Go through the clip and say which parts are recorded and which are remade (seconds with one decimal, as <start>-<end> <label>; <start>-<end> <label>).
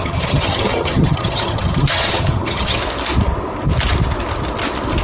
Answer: 0.0-2.8 remade; 2.8-5.0 recorded